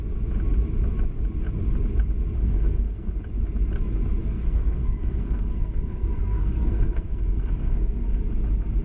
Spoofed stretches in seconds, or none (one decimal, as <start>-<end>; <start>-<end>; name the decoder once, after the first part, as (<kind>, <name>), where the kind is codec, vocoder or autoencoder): 2.4-3.1 (codec, SNAC); 4.2-8.2